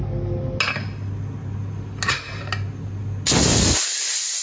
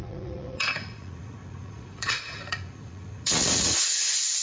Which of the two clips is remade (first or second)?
second